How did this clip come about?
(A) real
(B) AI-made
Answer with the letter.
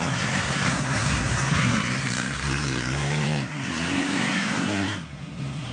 B